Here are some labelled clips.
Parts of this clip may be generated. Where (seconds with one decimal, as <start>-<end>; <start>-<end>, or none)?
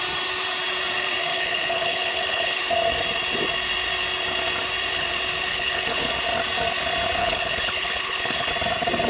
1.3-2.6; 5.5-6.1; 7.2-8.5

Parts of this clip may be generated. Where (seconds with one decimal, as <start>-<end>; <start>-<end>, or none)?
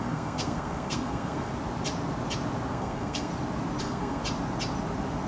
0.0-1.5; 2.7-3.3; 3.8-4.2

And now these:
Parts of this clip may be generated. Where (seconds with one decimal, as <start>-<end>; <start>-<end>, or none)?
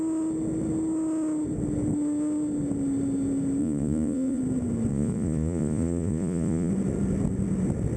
3.6-4.4; 4.9-6.7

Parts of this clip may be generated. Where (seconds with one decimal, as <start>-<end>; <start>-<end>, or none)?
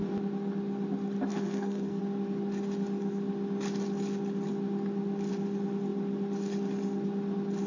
1.3-2.0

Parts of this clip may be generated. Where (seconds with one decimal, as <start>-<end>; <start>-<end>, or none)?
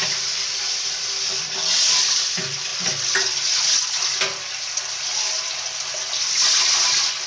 none